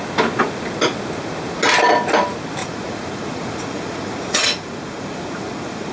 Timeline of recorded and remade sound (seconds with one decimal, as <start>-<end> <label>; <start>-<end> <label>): 0.0-2.6 recorded; 2.6-5.9 remade

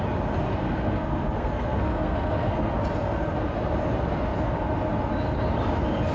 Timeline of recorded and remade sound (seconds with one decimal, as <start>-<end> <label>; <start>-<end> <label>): 0.0-0.6 recorded; 0.6-2.7 remade; 2.7-6.1 recorded

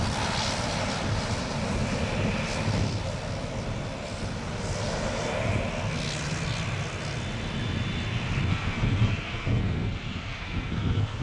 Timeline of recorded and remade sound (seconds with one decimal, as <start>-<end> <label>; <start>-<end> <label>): 0.0-8.5 recorded; 8.5-11.2 remade

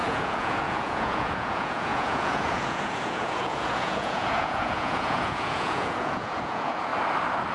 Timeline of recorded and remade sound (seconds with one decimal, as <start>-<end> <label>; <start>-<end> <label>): 0.0-6.9 remade; 6.9-7.5 recorded

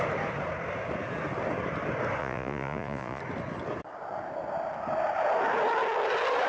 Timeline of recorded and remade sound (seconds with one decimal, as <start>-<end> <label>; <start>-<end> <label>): 0.0-2.2 recorded; 2.2-3.2 remade; 3.2-6.5 recorded

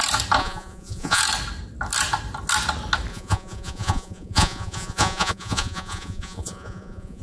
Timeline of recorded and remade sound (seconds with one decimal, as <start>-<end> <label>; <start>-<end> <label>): 0.0-0.4 recorded; 0.4-1.2 remade; 1.2-3.1 recorded; 3.1-7.2 remade